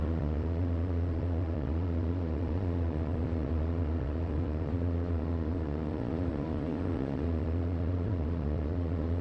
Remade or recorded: remade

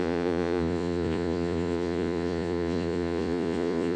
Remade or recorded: remade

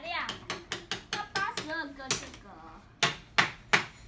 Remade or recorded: recorded